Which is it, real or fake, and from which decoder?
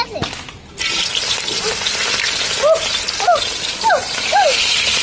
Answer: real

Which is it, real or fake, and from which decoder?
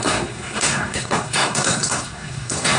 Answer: fake, codec, SNAC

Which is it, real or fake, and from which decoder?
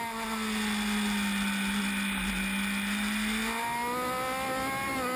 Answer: real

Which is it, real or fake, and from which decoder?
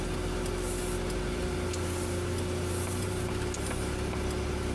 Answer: real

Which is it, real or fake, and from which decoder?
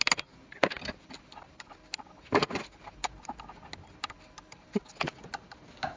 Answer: real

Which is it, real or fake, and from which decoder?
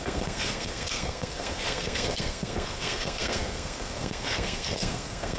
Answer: fake, codec, SNAC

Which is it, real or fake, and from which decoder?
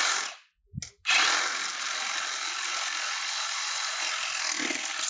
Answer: real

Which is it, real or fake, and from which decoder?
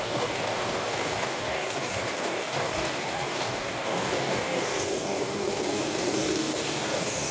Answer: fake, codec, DAC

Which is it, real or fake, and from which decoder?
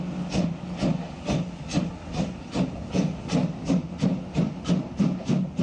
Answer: real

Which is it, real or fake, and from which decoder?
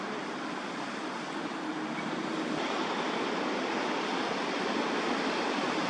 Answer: real